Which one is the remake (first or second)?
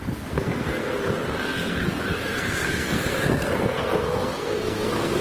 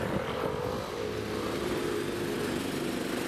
first